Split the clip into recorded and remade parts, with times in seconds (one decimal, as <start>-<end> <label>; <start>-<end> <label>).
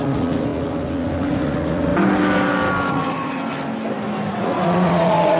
0.0-1.9 remade; 1.9-2.9 recorded; 2.9-3.4 remade; 3.4-4.3 recorded; 4.3-5.4 remade